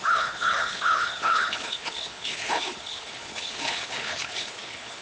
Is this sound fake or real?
fake